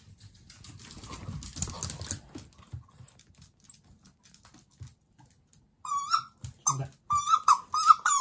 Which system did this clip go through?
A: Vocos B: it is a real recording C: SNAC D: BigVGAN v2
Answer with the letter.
B